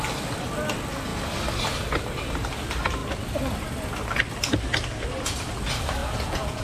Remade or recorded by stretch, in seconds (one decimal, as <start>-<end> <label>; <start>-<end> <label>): 0.0-6.0 recorded; 6.0-6.6 remade